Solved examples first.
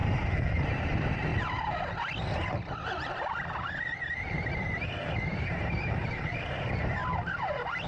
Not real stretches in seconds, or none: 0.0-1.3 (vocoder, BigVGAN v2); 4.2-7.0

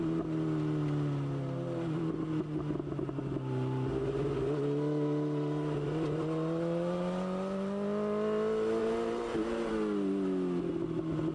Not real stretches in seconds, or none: 8.8-9.7 (vocoder, BigVGAN v2)